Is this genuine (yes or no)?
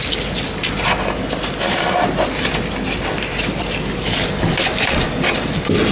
yes